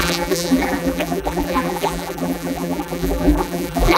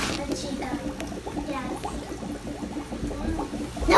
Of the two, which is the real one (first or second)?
second